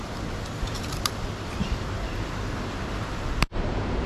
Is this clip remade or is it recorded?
remade